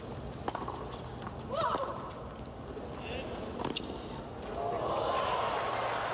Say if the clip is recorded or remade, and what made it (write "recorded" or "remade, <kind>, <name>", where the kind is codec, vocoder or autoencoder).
recorded